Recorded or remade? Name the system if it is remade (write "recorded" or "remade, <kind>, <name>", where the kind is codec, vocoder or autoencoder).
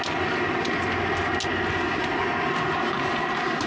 recorded